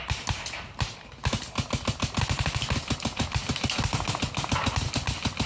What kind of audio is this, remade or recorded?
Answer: recorded